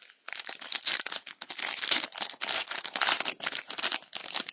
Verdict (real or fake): real